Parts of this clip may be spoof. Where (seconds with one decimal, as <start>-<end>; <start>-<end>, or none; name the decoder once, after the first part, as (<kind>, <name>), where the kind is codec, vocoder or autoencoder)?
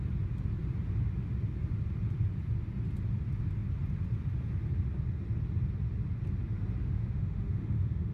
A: 6.8-8.1 (autoencoder, DAC-VAE)